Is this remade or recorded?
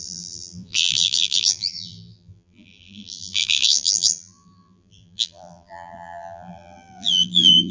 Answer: remade